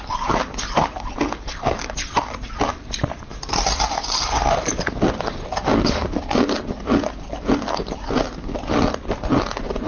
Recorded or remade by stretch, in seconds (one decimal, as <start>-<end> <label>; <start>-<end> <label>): 0.0-9.9 recorded